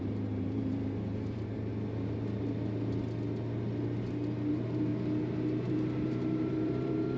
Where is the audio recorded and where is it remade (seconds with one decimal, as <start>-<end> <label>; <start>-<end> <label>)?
0.0-1.7 remade; 1.7-4.5 recorded; 4.5-4.9 remade; 4.9-5.7 recorded; 5.7-7.2 remade